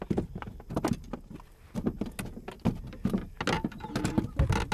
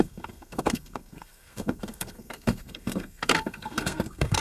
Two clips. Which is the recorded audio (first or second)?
first